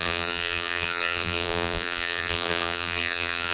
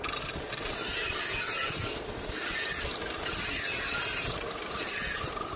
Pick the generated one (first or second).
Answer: first